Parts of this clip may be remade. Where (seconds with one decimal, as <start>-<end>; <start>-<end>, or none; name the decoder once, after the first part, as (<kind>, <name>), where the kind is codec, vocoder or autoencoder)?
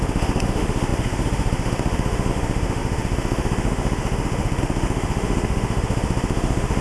0.0-6.8 (autoencoder, DAC-VAE)